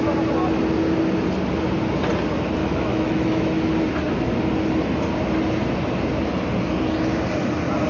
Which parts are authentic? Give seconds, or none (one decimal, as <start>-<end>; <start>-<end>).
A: 0.0-2.6; 3.7-7.9